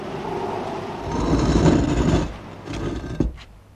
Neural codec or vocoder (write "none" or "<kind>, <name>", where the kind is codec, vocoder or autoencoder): none